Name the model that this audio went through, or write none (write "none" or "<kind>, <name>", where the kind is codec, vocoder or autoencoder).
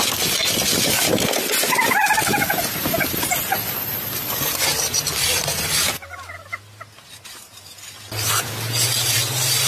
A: none